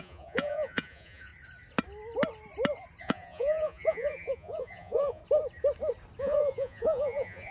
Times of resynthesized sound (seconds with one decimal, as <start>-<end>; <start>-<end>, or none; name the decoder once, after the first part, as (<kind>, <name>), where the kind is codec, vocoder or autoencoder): 0.0-1.3 (vocoder, Vocos); 3.0-5.2; 6.2-7.5